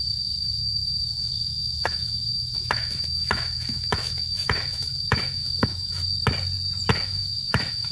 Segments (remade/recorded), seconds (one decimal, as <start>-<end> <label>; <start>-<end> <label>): 0.0-6.0 remade; 6.0-6.9 recorded; 6.9-7.9 remade

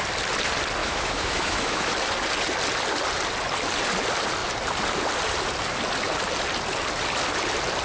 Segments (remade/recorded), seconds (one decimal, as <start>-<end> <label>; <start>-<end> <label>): 0.0-0.8 recorded; 0.8-1.9 remade; 1.9-7.8 recorded

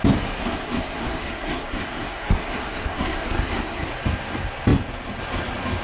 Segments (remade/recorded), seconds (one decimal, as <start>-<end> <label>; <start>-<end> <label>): 0.0-0.4 recorded; 0.4-3.9 remade; 3.9-5.8 recorded

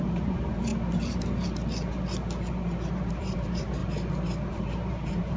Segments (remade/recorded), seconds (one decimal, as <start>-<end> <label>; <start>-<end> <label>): 0.0-0.7 remade; 0.7-3.1 recorded; 3.1-3.8 remade; 3.8-4.5 recorded; 4.5-5.4 remade

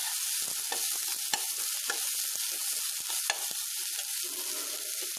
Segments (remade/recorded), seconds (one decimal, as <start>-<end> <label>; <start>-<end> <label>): 0.0-5.2 recorded

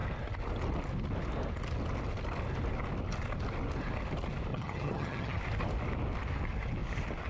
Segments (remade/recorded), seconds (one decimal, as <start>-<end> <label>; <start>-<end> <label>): 0.0-4.5 recorded; 4.5-5.4 remade; 5.4-7.3 recorded